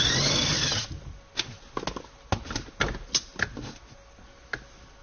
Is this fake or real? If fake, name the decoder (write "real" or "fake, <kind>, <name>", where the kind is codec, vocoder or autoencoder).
real